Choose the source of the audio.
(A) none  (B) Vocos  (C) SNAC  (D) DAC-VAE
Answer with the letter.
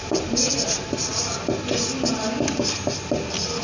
A